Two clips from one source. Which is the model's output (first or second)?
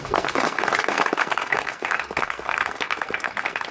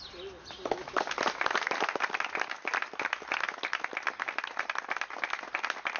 first